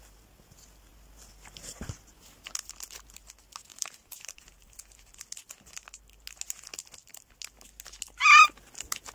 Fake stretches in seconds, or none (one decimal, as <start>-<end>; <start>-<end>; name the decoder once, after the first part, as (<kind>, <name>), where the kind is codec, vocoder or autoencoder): 3.7-4.4 (vocoder, BigVGAN v2)